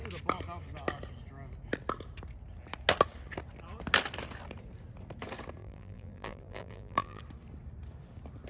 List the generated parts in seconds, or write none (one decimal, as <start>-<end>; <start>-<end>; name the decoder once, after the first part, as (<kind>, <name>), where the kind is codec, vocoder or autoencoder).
5.6-7.2 (vocoder, BigVGAN v2)